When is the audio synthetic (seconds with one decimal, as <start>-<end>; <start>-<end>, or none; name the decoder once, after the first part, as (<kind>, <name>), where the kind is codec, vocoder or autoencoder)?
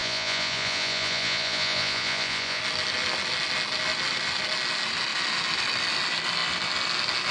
0.0-2.6 (vocoder, Vocos)